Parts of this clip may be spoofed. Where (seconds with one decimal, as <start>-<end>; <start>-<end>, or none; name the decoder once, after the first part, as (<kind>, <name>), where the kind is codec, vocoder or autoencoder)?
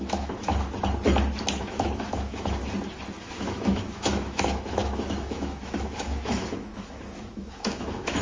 0.0-0.5 (autoencoder, DAC-VAE); 1.6-2.6; 3.2-8.2